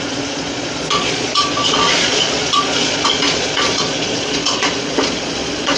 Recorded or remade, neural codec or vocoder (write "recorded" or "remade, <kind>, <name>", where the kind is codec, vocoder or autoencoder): remade, vocoder, Vocos